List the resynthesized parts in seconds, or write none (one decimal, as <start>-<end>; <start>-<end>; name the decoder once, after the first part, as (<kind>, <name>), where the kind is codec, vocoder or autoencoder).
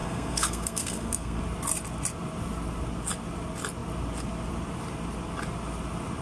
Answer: 0.0-1.4 (codec, SNAC)